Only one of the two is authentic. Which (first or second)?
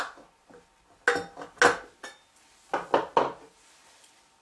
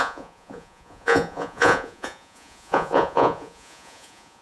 first